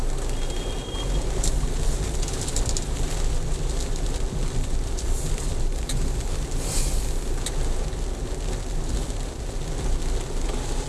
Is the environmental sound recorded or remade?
recorded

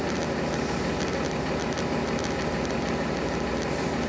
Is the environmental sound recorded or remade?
recorded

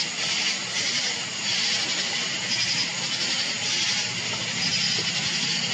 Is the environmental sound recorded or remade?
recorded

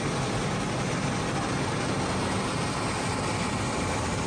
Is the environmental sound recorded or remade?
recorded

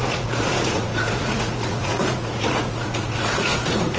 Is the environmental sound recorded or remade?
remade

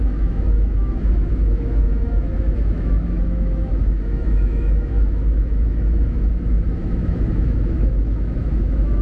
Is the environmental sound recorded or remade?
remade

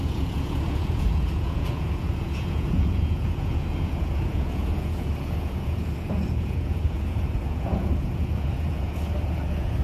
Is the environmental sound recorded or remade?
remade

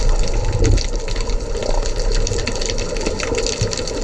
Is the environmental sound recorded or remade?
recorded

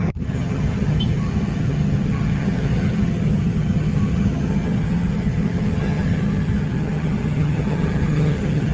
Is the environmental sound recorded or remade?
remade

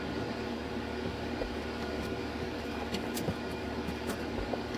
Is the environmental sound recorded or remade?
remade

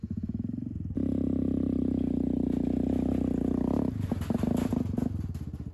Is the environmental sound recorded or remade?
recorded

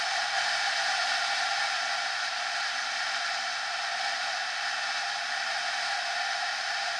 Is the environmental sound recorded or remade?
recorded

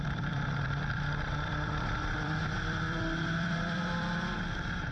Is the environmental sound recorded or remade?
remade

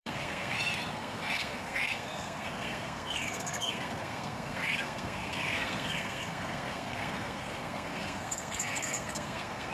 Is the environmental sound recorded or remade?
remade